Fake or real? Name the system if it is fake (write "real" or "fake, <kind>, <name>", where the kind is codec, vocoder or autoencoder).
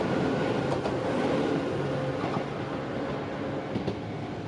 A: real